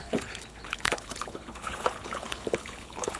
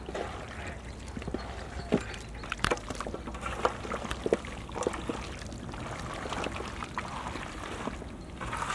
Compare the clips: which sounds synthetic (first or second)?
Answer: first